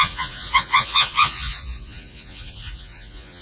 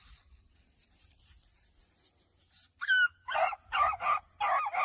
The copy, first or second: first